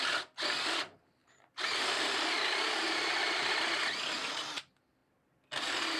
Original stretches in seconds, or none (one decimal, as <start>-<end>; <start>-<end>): 0.0-1.2; 3.5-6.0